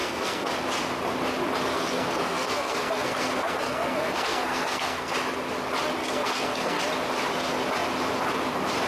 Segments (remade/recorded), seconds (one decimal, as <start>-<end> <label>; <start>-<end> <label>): 0.0-0.5 remade; 0.5-1.7 recorded; 1.7-5.1 remade; 5.1-6.0 recorded; 6.0-6.8 remade; 6.8-8.9 recorded